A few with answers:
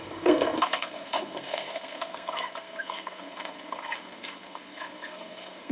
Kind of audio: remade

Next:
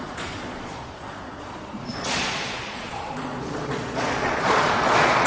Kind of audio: remade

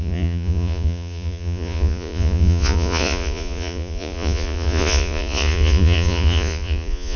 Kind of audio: remade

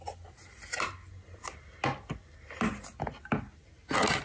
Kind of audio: recorded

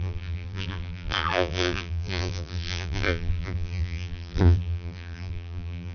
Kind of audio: remade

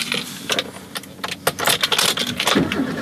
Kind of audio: recorded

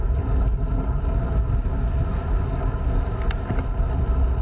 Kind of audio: recorded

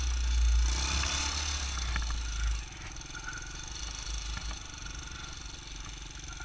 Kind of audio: recorded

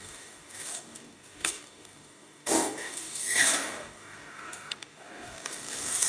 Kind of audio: remade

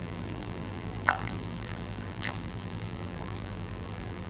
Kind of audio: remade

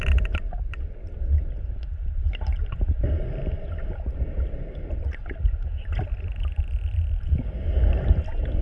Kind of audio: recorded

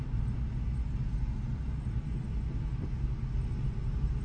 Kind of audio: recorded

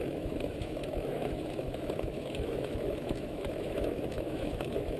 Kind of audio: remade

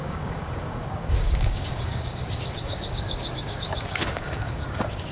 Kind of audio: remade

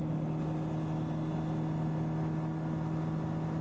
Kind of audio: recorded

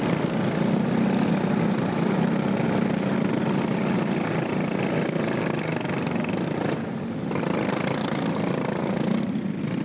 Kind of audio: recorded